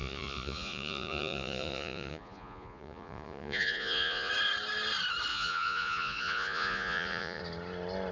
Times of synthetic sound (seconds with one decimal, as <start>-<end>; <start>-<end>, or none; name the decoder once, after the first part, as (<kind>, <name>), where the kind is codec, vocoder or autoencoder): 0.0-4.3 (vocoder, Vocos); 5.3-7.4